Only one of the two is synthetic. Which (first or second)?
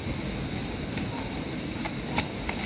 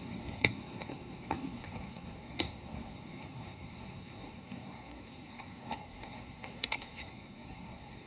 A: second